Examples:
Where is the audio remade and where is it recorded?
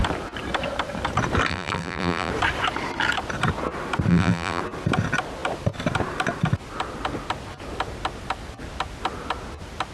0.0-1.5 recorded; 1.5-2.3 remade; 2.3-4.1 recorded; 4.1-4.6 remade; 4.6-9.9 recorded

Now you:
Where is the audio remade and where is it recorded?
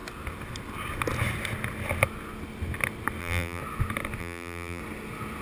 0.0-3.2 recorded; 3.2-3.6 remade; 3.6-4.2 recorded; 4.2-4.8 remade; 4.8-5.4 recorded